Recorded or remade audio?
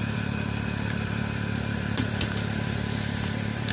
remade